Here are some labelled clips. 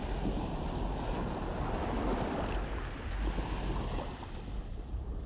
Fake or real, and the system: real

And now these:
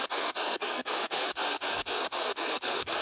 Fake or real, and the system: fake, codec, SNAC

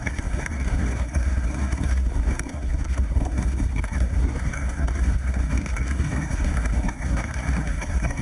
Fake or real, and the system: fake, codec, SNAC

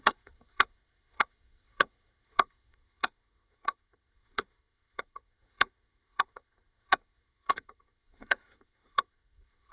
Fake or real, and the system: fake, codec, SNAC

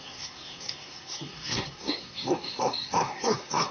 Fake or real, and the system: fake, codec, SNAC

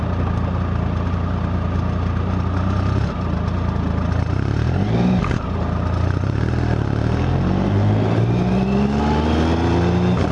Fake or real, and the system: real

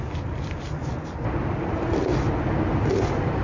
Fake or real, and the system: real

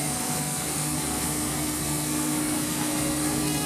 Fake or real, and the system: fake, codec, SNAC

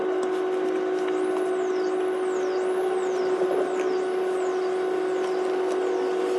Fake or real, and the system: real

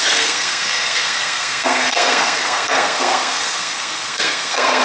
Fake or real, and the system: fake, codec, SNAC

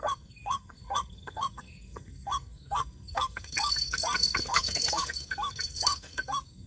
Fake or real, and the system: fake, codec, SNAC